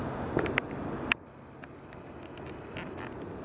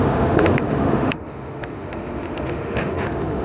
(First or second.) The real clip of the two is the first